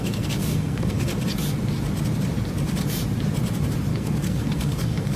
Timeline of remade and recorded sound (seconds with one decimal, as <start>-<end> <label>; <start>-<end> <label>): 0.0-1.1 remade; 1.1-3.9 recorded; 3.9-5.2 remade